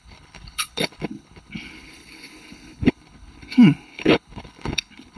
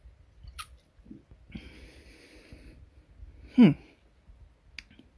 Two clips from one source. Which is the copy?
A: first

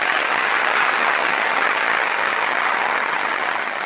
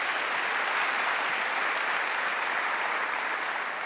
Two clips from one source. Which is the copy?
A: first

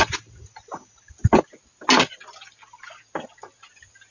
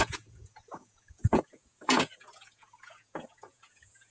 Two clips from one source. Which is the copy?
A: second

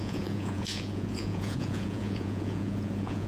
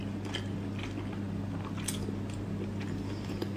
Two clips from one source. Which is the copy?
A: first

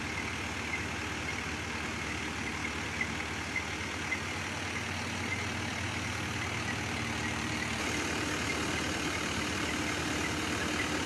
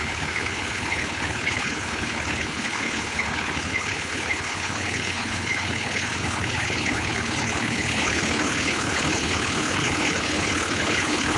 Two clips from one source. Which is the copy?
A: second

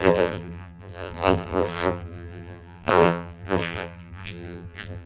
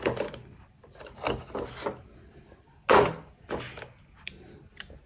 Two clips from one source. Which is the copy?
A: first